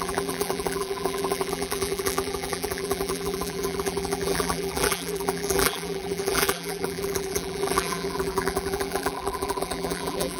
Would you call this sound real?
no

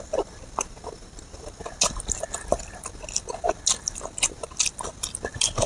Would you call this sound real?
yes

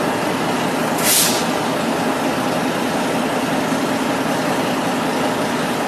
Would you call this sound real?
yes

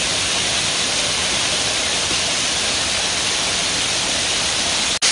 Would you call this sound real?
yes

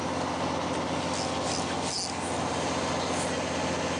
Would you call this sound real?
yes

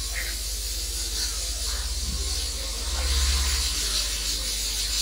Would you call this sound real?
yes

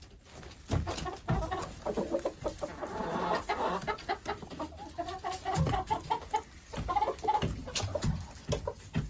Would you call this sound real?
yes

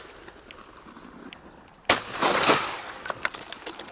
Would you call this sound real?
yes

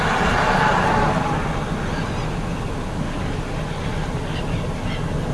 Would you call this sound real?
yes